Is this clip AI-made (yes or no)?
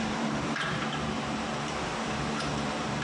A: yes